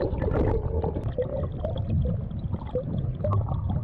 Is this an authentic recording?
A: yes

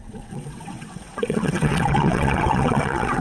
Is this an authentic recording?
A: no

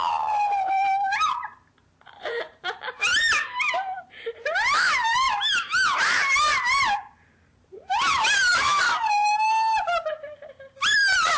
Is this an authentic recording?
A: no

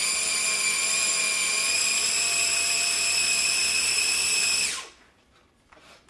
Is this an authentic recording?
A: no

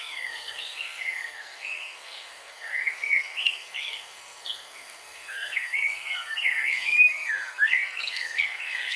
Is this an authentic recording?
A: no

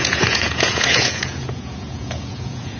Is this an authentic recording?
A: no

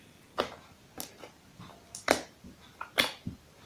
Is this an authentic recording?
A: yes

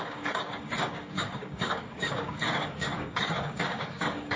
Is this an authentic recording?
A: no